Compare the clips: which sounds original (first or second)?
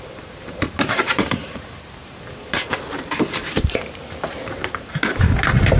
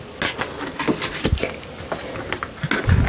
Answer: second